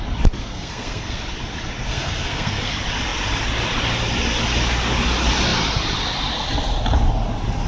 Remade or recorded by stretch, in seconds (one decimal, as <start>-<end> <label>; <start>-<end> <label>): 0.0-0.4 recorded; 0.4-1.2 remade; 1.2-1.9 recorded; 1.9-2.7 remade; 2.7-7.7 recorded